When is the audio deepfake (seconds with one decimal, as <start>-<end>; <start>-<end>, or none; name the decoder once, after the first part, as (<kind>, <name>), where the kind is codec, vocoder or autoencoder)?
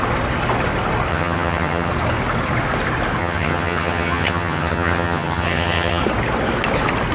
1.1-1.9 (vocoder, HiFi-GAN); 3.2-6.0